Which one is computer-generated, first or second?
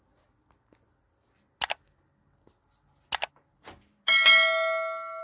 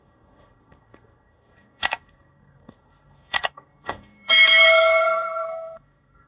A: second